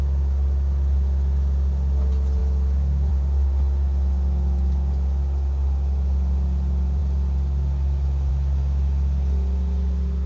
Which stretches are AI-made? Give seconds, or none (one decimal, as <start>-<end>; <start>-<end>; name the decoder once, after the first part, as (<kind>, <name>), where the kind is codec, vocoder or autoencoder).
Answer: none